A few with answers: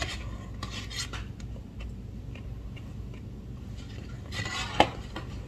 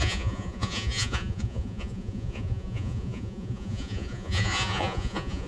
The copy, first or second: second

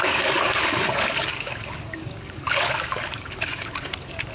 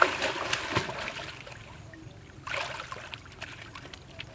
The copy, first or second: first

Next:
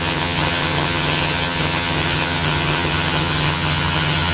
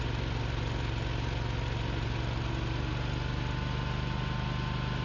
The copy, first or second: first